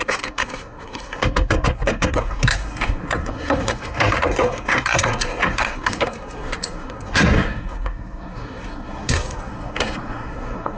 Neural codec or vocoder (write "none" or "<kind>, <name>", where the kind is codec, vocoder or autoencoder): codec, SNAC